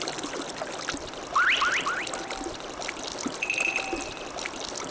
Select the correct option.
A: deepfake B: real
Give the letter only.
B